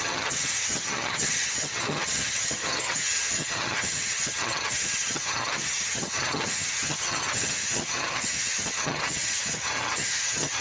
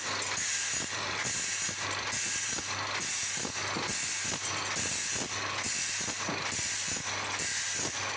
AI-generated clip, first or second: first